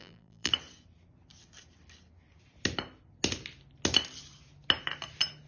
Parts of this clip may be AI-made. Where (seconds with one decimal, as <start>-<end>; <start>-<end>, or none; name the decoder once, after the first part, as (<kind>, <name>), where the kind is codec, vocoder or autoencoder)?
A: 0.0-0.5 (vocoder, BigVGAN v2)

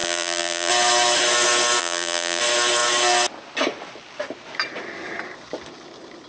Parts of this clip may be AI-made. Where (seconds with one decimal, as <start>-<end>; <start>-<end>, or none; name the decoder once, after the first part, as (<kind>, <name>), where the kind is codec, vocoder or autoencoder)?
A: 0.0-0.7 (vocoder, BigVGAN v2); 1.8-2.4